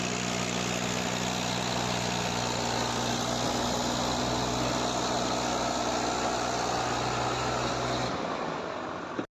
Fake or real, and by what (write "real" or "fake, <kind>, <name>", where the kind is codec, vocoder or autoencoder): real